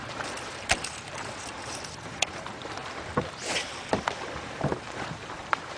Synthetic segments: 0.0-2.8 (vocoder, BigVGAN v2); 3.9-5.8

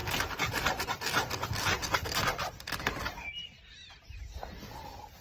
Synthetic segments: 0.0-0.6 (vocoder, BigVGAN v2)

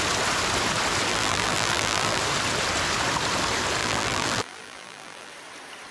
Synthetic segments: 1.1-2.2 (vocoder, BigVGAN v2); 3.8-5.3